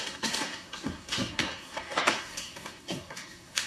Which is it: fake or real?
fake